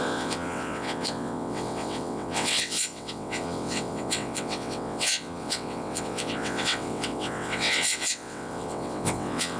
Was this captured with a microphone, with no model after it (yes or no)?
no